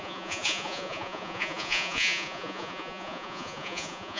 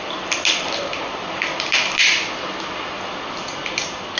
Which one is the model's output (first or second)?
first